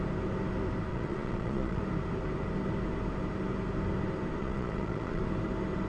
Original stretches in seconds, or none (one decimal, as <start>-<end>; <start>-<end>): 0.0-0.9; 1.8-4.4; 5.2-5.9